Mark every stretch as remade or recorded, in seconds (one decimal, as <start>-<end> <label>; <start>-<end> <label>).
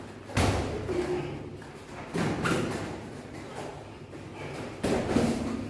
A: 0.0-5.7 recorded